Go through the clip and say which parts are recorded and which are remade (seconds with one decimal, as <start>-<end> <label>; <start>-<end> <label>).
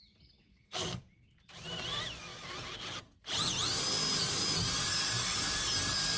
0.0-0.5 recorded; 0.5-1.0 remade; 1.0-6.2 recorded